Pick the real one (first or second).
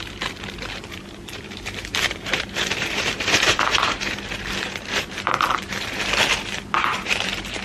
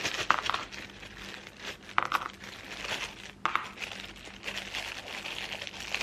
second